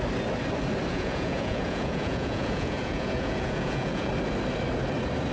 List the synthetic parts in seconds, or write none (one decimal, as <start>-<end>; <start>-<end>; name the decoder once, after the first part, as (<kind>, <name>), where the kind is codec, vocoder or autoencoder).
0.9-4.1 (vocoder, Vocos)